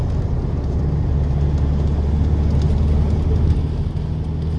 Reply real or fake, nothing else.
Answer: real